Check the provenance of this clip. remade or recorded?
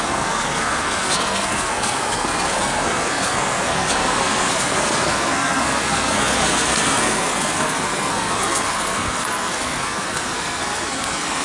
remade